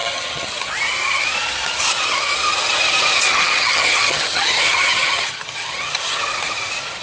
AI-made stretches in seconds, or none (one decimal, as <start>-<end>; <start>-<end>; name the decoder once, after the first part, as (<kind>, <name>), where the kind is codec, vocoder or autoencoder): 0.0-0.7 (vocoder, HiFi-GAN); 3.3-6.2